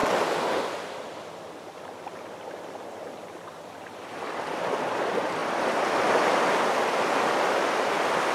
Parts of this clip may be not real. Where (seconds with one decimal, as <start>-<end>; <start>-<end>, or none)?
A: 0.0-8.3